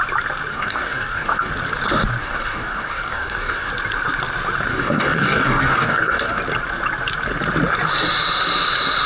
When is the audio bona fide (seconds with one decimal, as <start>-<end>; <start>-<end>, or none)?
0.0-0.5; 1.5-2.2; 3.7-4.7; 6.4-9.1